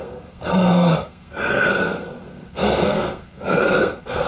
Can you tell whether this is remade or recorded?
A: remade